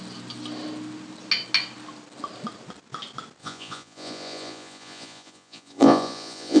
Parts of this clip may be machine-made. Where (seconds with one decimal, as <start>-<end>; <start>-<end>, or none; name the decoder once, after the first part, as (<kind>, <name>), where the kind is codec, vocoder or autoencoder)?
3.4-6.6 (vocoder, Vocos)